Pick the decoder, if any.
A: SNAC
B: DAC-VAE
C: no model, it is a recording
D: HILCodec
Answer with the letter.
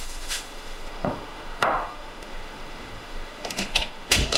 B